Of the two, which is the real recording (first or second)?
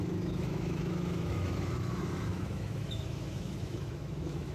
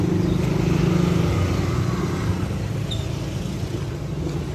second